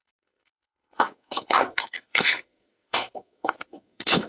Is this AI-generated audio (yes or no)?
yes